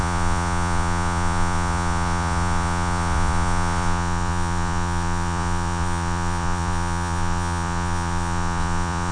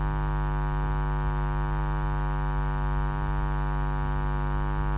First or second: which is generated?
first